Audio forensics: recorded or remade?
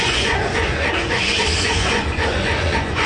remade